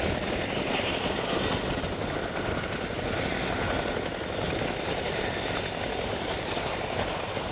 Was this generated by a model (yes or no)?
no